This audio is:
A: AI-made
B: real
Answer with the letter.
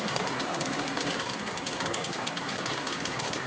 A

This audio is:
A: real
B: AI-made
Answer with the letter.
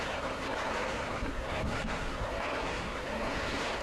B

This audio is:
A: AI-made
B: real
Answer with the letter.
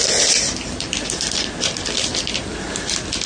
B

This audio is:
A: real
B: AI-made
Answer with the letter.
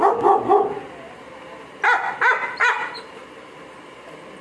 A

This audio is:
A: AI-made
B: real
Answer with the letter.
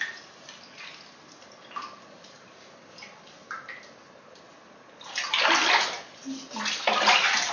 B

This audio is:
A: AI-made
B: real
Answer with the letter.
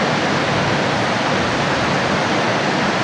B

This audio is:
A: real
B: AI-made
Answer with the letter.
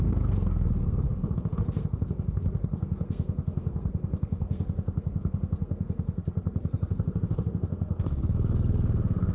B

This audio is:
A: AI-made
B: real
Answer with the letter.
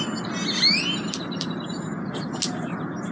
B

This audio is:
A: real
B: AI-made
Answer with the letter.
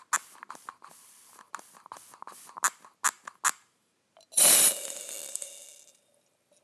A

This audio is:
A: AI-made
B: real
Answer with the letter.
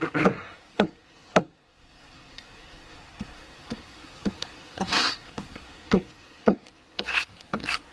A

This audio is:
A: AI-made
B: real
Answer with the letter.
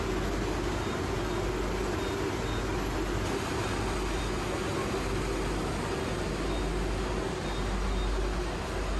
B